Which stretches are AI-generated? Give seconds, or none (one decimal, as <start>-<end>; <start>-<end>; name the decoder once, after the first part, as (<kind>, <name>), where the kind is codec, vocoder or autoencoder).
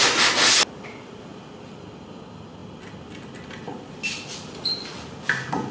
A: none